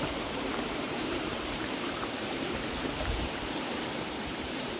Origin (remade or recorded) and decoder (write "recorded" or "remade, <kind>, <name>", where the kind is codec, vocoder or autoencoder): remade, vocoder, BigVGAN v2